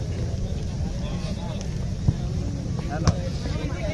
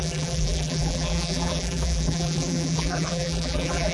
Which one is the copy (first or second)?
second